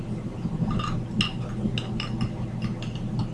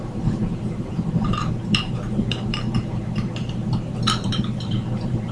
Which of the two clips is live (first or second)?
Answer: first